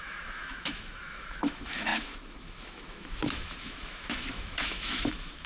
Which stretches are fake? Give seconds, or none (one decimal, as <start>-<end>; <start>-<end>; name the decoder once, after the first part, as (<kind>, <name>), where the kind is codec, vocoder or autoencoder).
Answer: 0.0-5.5 (autoencoder, DAC-VAE)